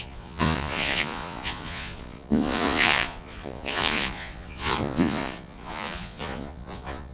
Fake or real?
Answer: fake